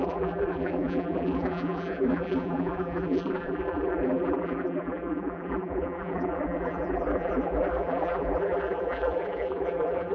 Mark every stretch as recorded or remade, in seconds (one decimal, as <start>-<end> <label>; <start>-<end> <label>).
0.0-10.1 remade